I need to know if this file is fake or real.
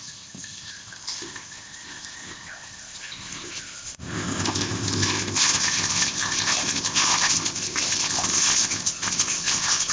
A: fake